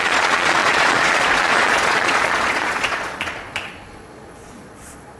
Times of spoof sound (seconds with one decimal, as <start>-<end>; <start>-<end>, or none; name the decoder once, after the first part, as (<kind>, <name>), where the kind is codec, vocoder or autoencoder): 0.0-5.2 (vocoder, Vocos)